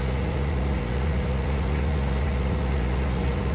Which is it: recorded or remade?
remade